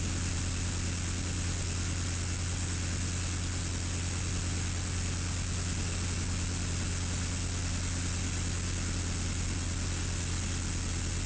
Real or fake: real